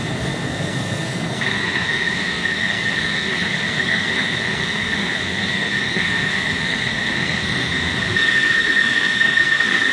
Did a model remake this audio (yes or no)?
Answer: yes